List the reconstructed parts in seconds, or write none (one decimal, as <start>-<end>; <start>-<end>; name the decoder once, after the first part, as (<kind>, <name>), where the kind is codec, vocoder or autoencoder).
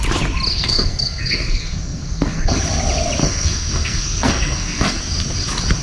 0.5-2.6 (codec, SNAC); 3.2-5.0